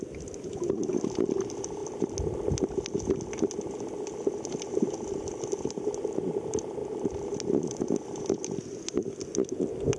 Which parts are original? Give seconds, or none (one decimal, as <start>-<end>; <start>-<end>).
0.0-10.0